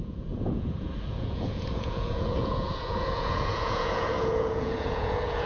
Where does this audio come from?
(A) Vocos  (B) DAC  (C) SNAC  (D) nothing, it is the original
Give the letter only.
A